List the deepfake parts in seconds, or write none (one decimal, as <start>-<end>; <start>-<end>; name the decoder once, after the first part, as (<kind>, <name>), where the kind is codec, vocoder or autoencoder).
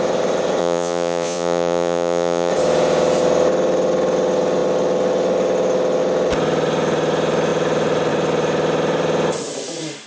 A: 0.6-2.5 (vocoder, Vocos)